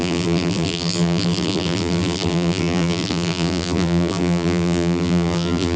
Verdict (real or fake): fake